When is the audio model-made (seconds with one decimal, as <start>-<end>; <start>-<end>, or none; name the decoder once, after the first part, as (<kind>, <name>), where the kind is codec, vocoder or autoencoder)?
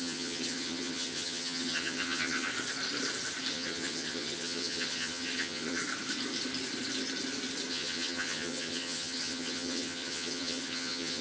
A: 0.0-2.5 (vocoder, HiFi-GAN); 3.5-5.8; 7.7-11.2